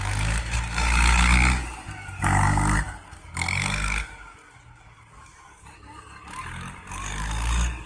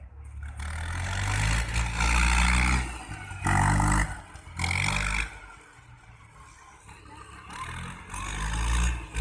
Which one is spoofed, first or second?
first